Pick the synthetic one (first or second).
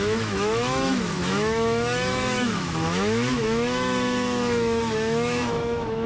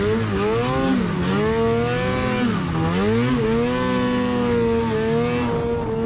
first